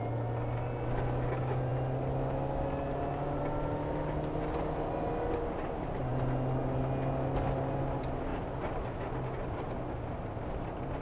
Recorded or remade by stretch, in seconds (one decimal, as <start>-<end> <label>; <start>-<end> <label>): 0.0-11.0 recorded